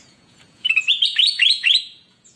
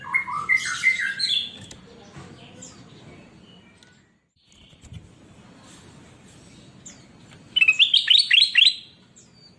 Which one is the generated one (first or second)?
first